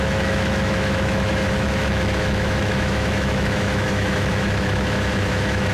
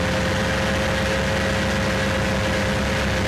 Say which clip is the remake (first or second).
first